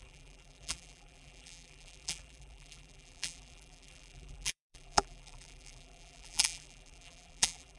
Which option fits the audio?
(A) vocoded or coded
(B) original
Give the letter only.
A